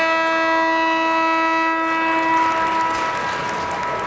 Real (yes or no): yes